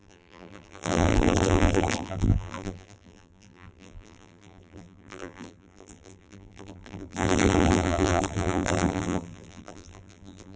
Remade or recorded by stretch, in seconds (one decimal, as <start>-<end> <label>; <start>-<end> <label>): 0.0-10.6 remade

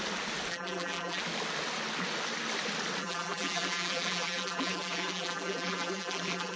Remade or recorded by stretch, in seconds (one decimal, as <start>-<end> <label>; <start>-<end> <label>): 0.0-0.5 recorded; 0.5-1.2 remade; 1.2-3.0 recorded; 3.0-6.6 remade

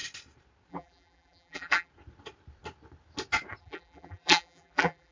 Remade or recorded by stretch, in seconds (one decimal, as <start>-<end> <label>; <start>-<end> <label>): 0.0-0.7 recorded; 0.7-1.9 remade; 1.9-3.6 recorded; 3.6-5.1 remade